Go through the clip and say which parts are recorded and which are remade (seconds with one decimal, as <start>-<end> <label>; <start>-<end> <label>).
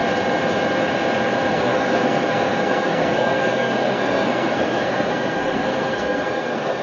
0.0-1.5 recorded; 1.5-6.8 remade